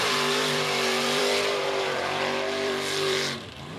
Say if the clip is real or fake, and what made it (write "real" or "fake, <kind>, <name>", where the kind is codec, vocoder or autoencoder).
fake, vocoder, BigVGAN v2